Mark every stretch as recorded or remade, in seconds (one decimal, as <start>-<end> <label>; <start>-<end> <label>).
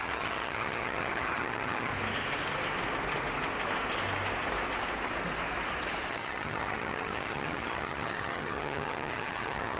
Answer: 0.0-1.9 remade; 1.9-6.1 recorded; 6.1-9.8 remade